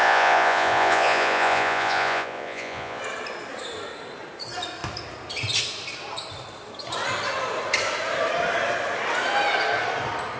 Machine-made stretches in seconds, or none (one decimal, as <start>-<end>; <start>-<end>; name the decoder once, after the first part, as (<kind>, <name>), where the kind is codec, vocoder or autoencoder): 0.0-3.0 (vocoder, Vocos)